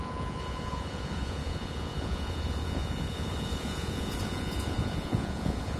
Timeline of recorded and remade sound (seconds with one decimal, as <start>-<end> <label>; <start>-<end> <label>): 0.0-5.8 remade

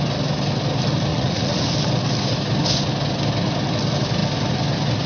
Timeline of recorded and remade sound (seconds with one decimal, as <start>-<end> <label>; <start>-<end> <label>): 0.0-1.1 recorded; 1.1-1.6 remade; 1.6-5.1 recorded